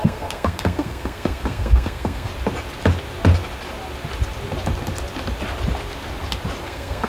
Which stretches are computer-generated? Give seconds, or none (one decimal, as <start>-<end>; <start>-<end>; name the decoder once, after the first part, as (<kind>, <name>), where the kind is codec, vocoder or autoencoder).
0.0-2.3 (codec, SNAC); 6.6-7.1